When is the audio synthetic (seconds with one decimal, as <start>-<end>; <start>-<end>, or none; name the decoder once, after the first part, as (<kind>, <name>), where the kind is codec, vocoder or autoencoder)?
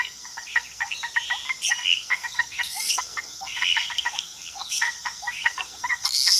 0.0-0.9 (codec, SNAC); 1.7-6.4